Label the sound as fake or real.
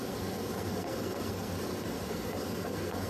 fake